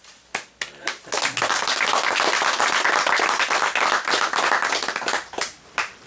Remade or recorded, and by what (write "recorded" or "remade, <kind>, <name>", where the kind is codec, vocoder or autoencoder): recorded